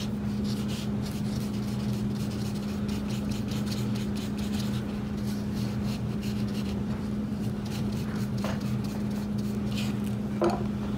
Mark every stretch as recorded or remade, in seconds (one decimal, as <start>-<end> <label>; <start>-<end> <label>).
0.0-6.5 recorded; 6.5-8.6 remade; 8.6-11.0 recorded